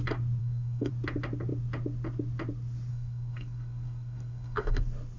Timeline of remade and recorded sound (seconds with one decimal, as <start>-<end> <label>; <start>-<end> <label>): 0.0-0.4 recorded; 0.4-0.9 remade; 0.9-2.9 recorded; 2.9-4.8 remade; 4.8-5.2 recorded